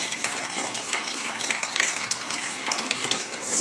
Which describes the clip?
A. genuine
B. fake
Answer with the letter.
B